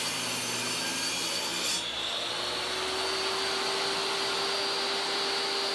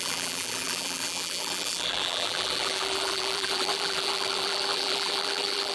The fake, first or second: second